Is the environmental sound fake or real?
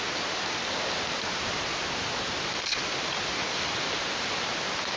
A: real